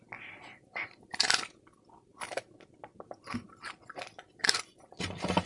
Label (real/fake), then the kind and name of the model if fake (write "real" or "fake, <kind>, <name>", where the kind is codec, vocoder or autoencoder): fake, vocoder, BigVGAN v2